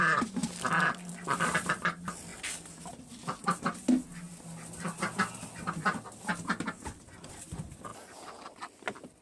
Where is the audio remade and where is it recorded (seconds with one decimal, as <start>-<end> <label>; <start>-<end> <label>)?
0.0-2.3 remade; 2.3-7.3 recorded; 7.3-7.9 remade; 7.9-9.2 recorded